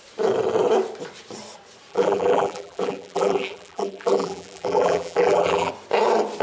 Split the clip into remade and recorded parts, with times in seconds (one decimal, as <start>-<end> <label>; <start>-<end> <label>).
0.0-1.9 recorded; 1.9-5.7 remade; 5.7-6.4 recorded